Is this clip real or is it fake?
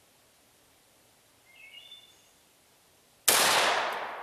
real